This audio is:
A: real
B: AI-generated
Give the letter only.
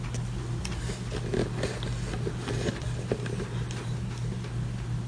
A